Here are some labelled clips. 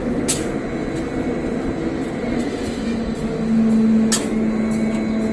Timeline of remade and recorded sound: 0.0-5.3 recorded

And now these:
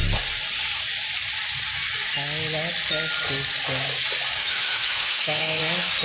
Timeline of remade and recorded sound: 0.0-4.4 recorded; 4.4-5.6 remade; 5.6-6.0 recorded

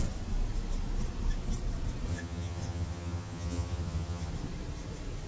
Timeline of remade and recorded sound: 0.0-2.1 recorded; 2.1-4.3 remade; 4.3-5.3 recorded